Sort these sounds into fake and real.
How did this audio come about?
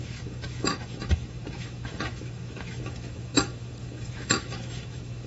fake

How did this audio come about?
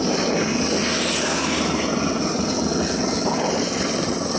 real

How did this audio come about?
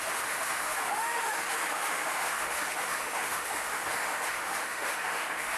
fake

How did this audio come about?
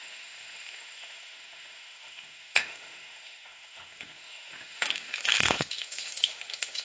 fake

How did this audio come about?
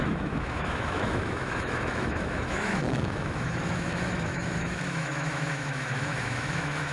fake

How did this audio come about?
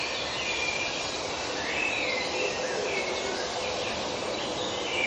real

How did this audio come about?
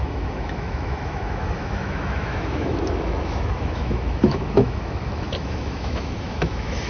fake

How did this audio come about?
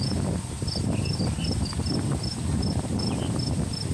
real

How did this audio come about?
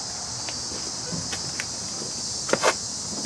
real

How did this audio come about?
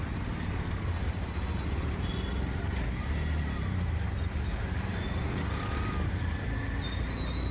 real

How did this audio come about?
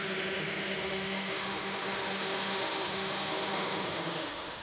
fake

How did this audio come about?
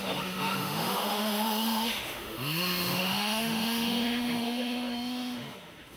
fake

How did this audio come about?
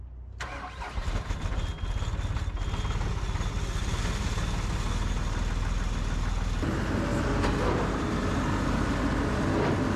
real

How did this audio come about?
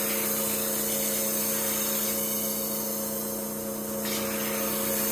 real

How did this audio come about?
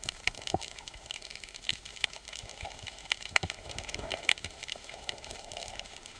fake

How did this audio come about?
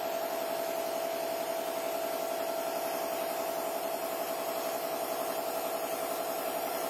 real